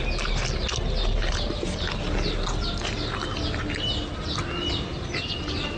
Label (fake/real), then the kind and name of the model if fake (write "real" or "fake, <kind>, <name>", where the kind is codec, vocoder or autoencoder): real